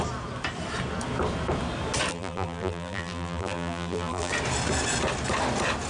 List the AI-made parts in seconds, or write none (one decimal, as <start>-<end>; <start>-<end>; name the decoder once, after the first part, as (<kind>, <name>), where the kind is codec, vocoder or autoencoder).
2.1-4.3 (vocoder, BigVGAN v2)